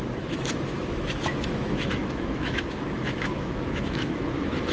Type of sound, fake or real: fake